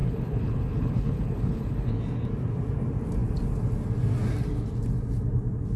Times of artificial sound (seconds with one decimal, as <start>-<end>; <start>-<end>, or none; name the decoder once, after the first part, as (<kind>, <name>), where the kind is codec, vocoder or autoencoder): 0.0-1.9 (codec, HILCodec)